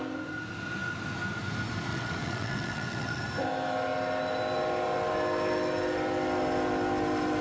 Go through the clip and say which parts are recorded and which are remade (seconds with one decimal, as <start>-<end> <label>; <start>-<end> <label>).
0.0-1.9 recorded; 1.9-3.2 remade; 3.2-7.4 recorded